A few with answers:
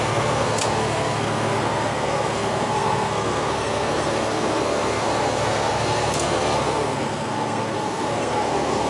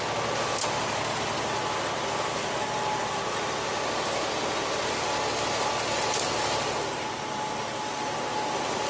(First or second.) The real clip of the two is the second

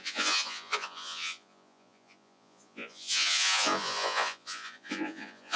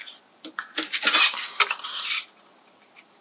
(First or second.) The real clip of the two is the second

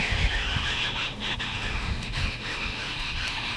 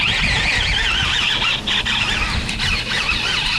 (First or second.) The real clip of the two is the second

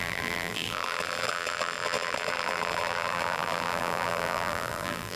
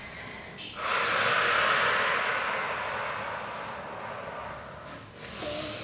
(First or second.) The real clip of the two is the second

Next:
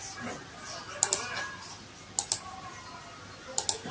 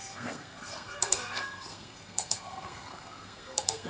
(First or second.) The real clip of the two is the first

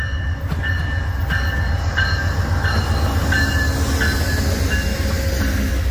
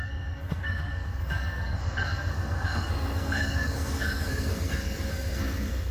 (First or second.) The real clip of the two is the first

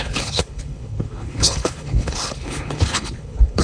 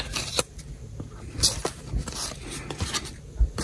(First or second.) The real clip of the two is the second